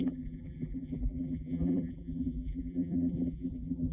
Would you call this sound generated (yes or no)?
yes